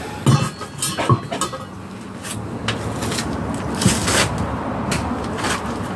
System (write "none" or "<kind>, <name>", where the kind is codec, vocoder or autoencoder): none